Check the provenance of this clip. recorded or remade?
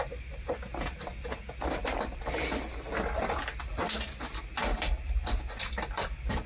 recorded